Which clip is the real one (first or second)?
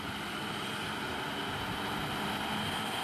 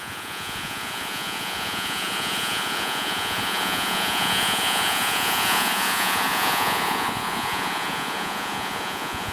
first